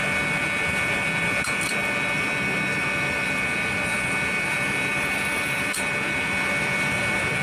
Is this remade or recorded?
remade